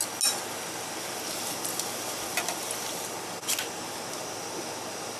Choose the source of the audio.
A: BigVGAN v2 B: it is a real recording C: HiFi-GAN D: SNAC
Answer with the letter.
B